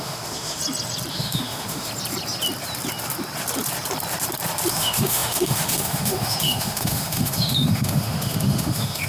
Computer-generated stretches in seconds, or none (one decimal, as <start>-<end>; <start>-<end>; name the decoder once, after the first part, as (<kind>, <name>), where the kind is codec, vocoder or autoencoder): 0.0-0.6 (autoencoder, DAC-VAE); 1.1-1.9; 4.7-9.1